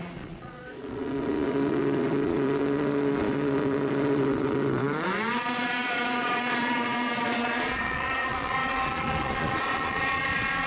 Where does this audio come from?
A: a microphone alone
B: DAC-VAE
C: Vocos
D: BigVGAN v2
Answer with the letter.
C